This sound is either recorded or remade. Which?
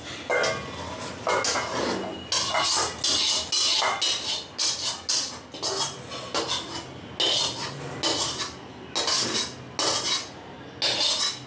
recorded